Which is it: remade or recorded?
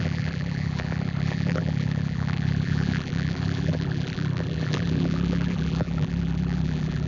remade